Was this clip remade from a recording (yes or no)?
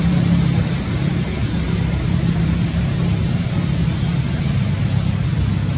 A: yes